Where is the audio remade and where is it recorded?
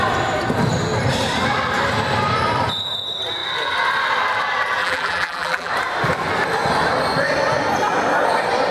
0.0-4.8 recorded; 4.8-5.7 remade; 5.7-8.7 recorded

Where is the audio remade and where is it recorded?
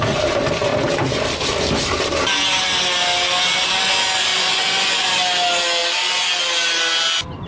0.0-4.3 recorded; 4.3-5.1 remade; 5.1-7.5 recorded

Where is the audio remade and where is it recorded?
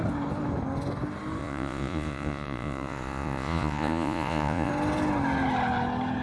0.0-1.4 recorded; 1.4-4.7 remade; 4.7-6.2 recorded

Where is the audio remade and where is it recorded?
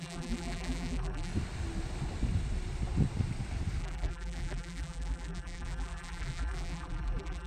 0.0-1.3 remade; 1.3-3.8 recorded; 3.8-7.5 remade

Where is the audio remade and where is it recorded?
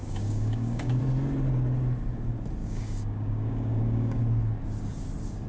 0.0-1.0 remade; 1.0-2.6 recorded; 2.6-4.2 remade; 4.2-5.5 recorded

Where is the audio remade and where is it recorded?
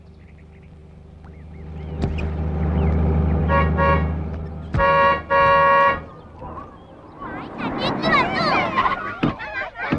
0.0-10.0 recorded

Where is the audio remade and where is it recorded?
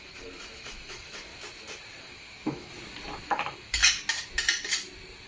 0.0-1.3 remade; 1.3-2.0 recorded; 2.0-2.7 remade; 2.7-3.3 recorded; 3.3-3.8 remade; 3.8-5.3 recorded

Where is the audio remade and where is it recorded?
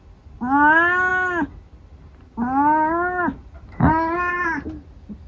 0.0-5.3 recorded